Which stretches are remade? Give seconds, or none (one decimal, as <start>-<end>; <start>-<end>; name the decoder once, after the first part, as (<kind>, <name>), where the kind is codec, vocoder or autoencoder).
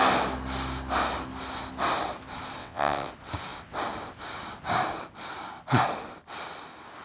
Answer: 2.6-3.1 (vocoder, WaveNeXt)